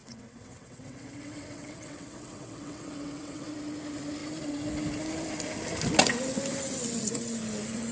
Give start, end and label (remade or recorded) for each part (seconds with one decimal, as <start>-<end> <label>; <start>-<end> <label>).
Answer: 0.0-3.5 remade; 3.5-7.9 recorded

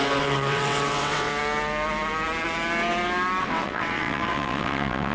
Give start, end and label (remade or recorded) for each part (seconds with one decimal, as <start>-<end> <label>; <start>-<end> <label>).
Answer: 0.0-1.3 remade; 1.3-3.4 recorded; 3.4-5.1 remade